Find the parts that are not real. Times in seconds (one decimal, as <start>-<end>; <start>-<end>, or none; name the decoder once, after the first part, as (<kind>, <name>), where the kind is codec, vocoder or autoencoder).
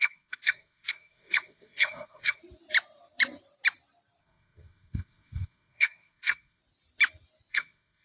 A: 0.0-2.4 (codec, SNAC); 4.2-6.6; 7.5-8.0